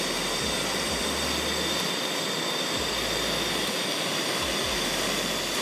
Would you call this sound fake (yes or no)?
no